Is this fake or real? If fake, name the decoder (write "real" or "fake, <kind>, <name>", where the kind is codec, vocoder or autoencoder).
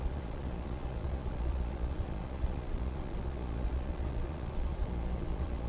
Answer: fake, vocoder, Vocos